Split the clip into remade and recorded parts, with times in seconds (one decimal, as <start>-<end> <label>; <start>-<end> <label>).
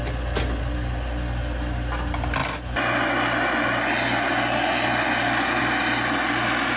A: 0.0-6.8 recorded